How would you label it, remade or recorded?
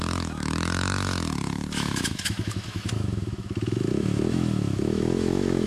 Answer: remade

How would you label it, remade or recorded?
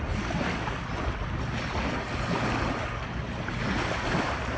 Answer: recorded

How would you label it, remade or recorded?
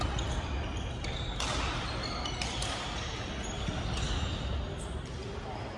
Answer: recorded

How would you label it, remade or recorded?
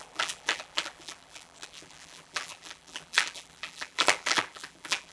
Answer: remade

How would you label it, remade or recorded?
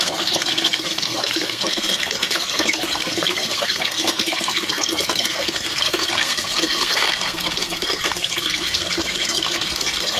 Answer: remade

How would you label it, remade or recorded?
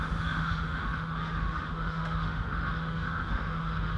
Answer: remade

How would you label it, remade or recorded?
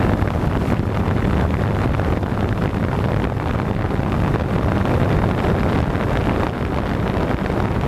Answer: recorded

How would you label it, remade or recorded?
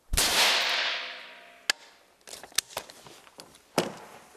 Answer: recorded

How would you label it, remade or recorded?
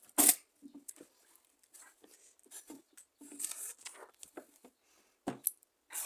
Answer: recorded